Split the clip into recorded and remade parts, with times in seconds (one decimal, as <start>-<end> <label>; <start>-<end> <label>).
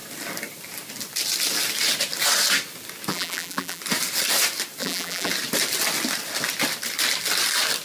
0.0-3.1 recorded; 3.1-3.8 remade; 3.8-4.8 recorded; 4.8-5.3 remade; 5.3-7.8 recorded